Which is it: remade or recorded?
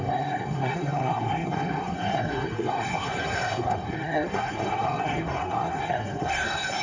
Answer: remade